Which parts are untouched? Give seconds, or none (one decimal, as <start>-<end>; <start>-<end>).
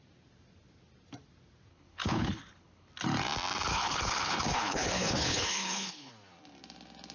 0.0-1.7; 2.9-3.7; 6.1-7.1